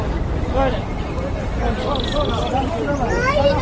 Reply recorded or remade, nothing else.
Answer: recorded